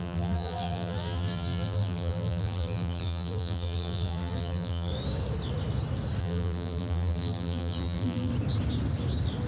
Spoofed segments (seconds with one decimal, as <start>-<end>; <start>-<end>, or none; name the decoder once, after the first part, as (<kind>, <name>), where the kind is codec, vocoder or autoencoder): 0.0-4.9 (vocoder, BigVGAN v2); 6.2-8.3